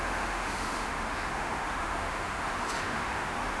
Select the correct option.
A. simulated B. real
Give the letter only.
A